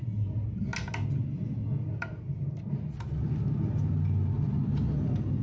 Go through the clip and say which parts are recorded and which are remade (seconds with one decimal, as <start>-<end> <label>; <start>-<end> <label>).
0.0-5.4 recorded